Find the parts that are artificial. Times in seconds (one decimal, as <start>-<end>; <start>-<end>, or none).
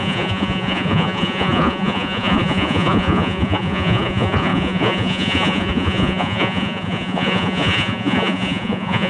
0.0-9.1